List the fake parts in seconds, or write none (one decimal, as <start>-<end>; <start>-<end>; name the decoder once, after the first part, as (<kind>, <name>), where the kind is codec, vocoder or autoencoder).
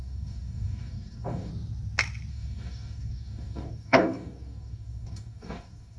0.0-1.5 (codec, DAC); 2.3-6.0